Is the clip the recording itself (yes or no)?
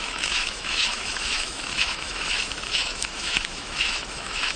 no